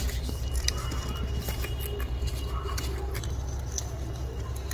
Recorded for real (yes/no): yes